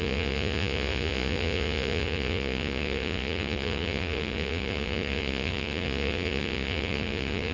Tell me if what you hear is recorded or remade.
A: remade